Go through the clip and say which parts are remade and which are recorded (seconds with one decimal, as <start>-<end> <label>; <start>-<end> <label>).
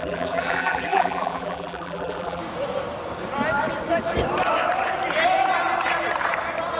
0.0-2.4 remade; 2.4-6.8 recorded